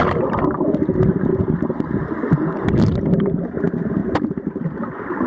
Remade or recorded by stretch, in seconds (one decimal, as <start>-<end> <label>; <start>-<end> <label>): 0.0-5.3 recorded